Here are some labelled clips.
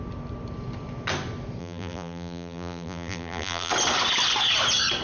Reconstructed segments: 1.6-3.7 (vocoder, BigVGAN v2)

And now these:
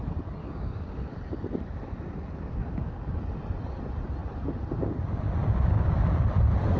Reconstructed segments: 0.4-1.0 (codec, DAC); 5.4-6.0

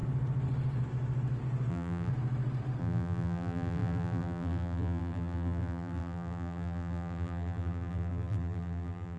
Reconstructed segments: 1.7-2.1 (vocoder, BigVGAN v2); 2.8-9.2

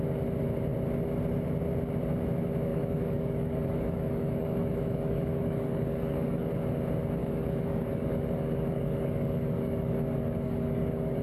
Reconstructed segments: 2.7-6.5 (codec, DAC); 7.2-11.2

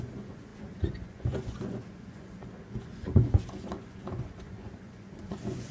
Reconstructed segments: 0.0-5.7 (vocoder, Vocos)

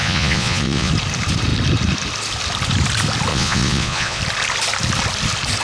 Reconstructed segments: 0.0-0.9 (vocoder, Vocos); 3.3-4.2

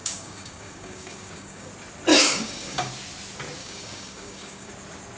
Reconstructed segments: 0.0-1.7 (codec, DAC); 2.1-2.9; 3.6-4.7

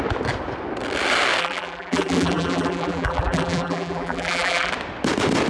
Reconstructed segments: 1.4-4.7 (vocoder, BigVGAN v2)